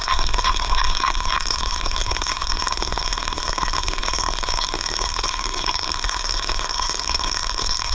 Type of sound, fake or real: fake